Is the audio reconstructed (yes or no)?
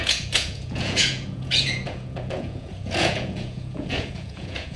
yes